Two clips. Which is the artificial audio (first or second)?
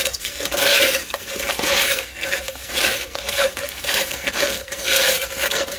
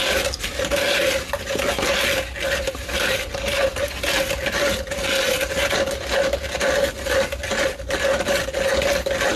first